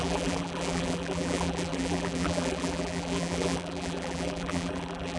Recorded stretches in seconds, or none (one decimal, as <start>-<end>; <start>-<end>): none